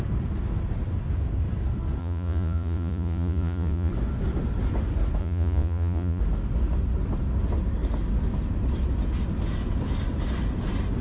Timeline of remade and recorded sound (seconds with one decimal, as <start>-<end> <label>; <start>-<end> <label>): 0.0-2.0 recorded; 2.0-3.9 remade; 3.9-5.2 recorded; 5.2-6.2 remade; 6.2-11.0 recorded